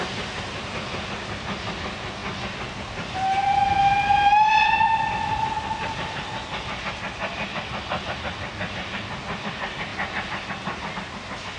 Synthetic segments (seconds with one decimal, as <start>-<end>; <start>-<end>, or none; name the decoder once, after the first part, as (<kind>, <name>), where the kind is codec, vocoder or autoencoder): none